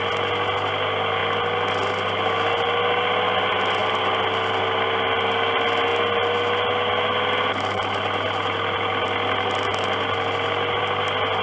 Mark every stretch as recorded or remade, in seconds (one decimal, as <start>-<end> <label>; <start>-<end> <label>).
0.0-3.8 recorded; 3.8-4.6 remade; 4.6-5.9 recorded; 5.9-10.8 remade; 10.8-11.4 recorded